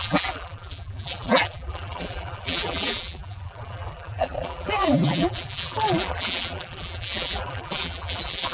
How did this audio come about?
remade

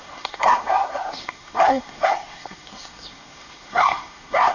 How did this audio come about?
remade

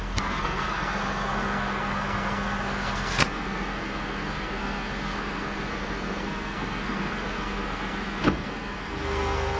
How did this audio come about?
remade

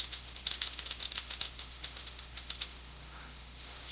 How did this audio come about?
remade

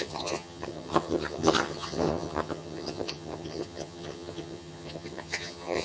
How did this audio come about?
remade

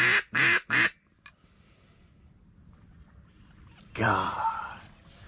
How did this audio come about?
recorded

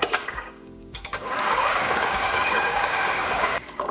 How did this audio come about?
remade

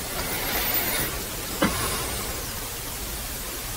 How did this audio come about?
recorded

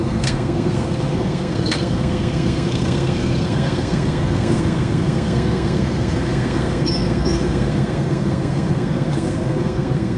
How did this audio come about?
remade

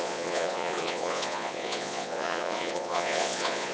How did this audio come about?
remade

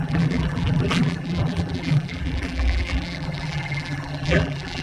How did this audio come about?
remade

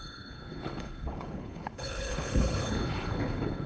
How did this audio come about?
remade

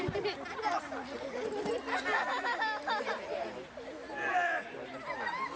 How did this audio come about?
recorded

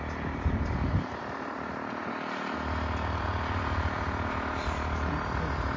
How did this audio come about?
recorded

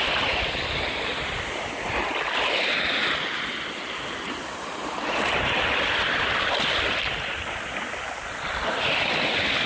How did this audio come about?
recorded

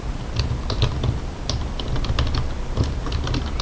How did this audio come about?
recorded